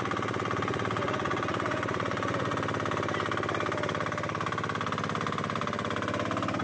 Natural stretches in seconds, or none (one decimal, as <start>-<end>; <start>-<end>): 2.5-6.6